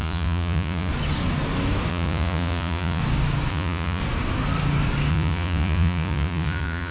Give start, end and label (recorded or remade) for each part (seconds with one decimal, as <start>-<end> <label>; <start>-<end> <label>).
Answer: 0.0-0.9 remade; 0.9-1.9 recorded; 1.9-3.0 remade; 3.0-3.5 recorded; 3.5-4.0 remade; 4.0-5.1 recorded; 5.1-6.9 remade